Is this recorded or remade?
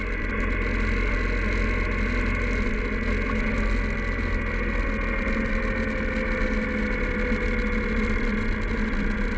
recorded